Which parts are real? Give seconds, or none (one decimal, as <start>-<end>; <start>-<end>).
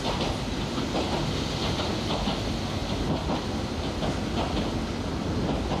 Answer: 0.0-5.8